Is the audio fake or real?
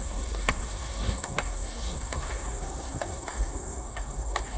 fake